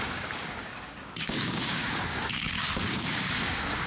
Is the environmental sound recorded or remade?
remade